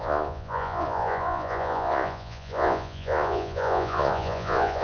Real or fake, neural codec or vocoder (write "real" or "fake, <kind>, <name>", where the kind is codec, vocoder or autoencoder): fake, vocoder, Vocos